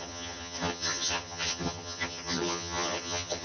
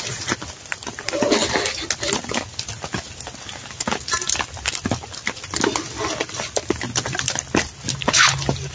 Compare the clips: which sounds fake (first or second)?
first